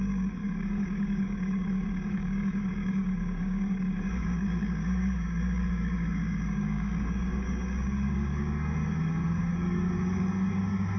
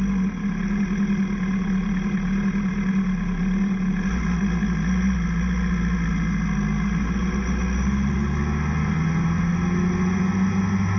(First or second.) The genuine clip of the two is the second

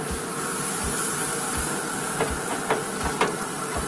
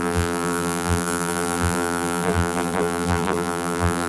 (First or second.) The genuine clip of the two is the first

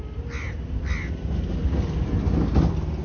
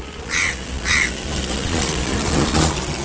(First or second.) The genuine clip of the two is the first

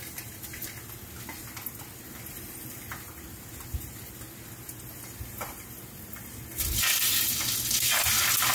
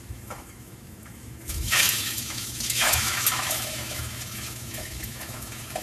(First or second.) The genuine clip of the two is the first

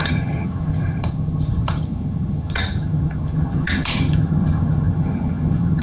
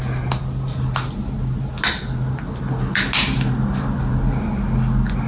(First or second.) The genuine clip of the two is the second